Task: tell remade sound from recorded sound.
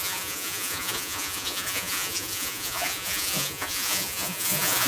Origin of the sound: remade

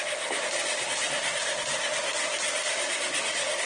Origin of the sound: recorded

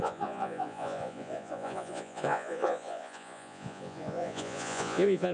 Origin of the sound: remade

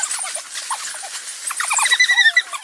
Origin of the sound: recorded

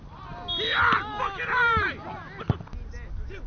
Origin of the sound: recorded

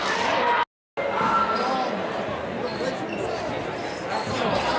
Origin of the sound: recorded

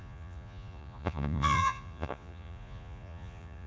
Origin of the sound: remade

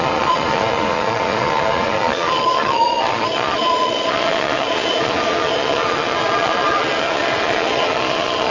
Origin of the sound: remade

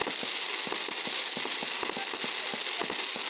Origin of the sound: recorded